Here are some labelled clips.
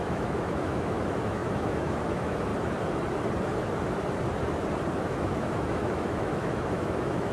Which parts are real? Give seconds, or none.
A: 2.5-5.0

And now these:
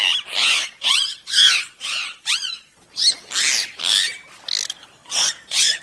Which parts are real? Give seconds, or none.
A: 0.0-0.4; 3.0-5.0

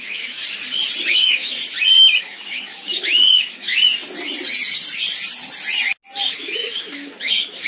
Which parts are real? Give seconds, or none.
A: 0.4-1.1; 1.6-2.2; 3.7-6.3

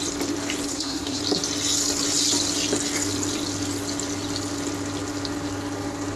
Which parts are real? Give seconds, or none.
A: 0.0-0.7; 1.2-6.2